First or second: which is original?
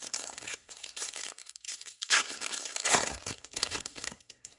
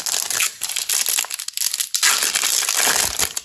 second